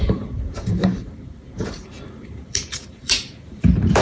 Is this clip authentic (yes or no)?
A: no